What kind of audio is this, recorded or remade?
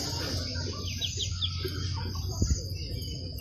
recorded